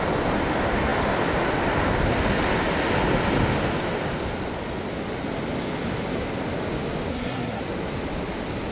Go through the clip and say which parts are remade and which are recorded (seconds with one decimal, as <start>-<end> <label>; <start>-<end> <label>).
0.0-7.1 recorded; 7.1-7.6 remade; 7.6-8.7 recorded